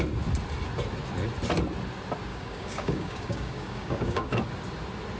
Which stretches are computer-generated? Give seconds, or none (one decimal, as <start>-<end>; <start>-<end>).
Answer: 2.3-4.3